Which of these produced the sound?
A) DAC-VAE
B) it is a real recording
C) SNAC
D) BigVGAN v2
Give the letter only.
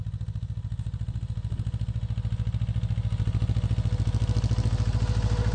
B